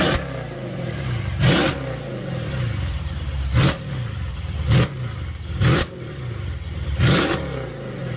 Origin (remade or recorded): recorded